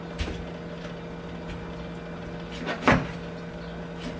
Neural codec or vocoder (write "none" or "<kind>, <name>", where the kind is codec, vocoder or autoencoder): none